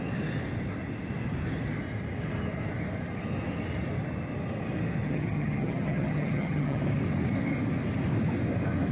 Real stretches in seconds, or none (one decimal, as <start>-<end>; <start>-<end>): 0.0-5.0; 6.8-8.9